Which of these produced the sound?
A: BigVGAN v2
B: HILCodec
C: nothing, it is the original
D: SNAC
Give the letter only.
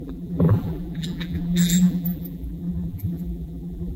A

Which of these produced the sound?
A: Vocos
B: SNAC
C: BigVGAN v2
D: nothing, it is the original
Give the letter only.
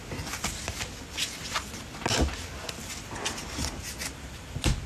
D